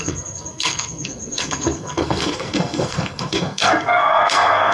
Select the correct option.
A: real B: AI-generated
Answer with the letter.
B